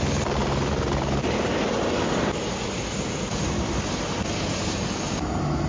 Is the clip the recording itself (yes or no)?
yes